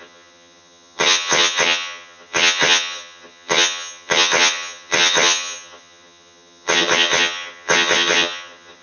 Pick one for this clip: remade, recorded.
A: remade